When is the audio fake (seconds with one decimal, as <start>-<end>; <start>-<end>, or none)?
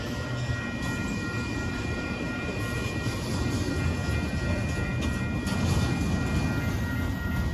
1.0-3.7